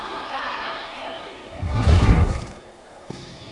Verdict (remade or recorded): remade